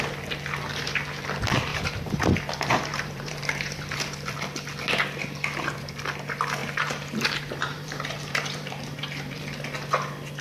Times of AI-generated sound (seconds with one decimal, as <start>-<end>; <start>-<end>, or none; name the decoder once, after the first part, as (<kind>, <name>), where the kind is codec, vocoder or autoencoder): 1.7-2.2 (vocoder, BigVGAN v2); 2.9-4.0; 6.6-9.4